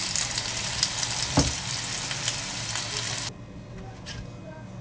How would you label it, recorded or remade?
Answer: recorded